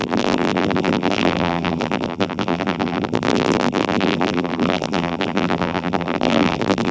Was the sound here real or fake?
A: fake